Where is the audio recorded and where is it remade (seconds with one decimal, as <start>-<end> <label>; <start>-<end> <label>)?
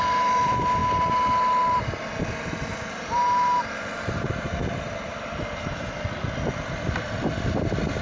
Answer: 0.0-0.8 remade; 0.8-1.7 recorded; 1.7-8.0 remade